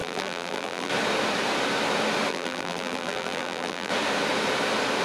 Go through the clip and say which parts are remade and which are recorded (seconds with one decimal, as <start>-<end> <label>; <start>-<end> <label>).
0.0-0.9 remade; 0.9-2.3 recorded; 2.3-3.9 remade; 3.9-5.0 recorded